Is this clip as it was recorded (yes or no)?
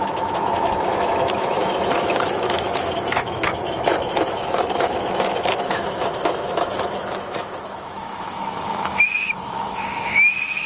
no